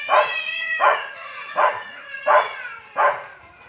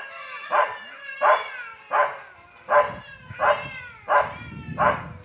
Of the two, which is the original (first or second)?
second